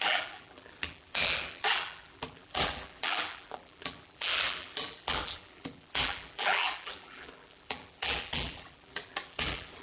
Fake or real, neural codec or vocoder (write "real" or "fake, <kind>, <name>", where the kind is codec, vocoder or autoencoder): fake, vocoder, BigVGAN v2